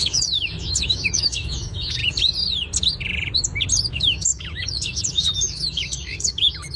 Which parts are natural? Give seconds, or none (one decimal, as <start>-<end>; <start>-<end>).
2.0-3.9